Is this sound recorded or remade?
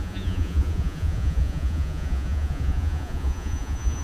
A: remade